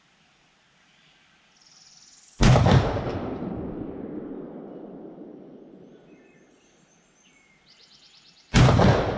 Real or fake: real